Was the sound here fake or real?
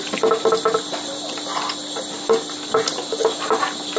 real